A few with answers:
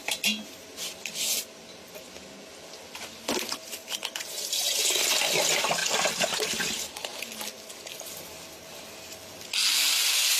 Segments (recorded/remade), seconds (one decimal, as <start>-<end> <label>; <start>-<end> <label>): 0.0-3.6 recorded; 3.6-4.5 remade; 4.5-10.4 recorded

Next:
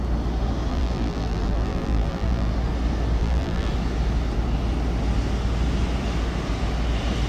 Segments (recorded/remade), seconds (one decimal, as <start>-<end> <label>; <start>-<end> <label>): 0.0-0.7 recorded; 0.7-2.5 remade; 2.5-3.2 recorded; 3.2-3.7 remade; 3.7-7.3 recorded

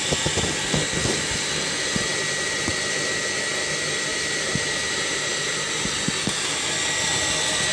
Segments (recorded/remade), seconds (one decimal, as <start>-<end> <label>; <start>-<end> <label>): 0.0-4.1 recorded; 4.1-5.9 remade; 5.9-7.7 recorded

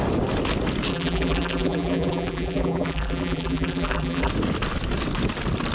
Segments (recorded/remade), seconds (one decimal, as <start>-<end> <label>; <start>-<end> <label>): 0.0-0.9 recorded; 0.9-4.3 remade; 4.3-5.7 recorded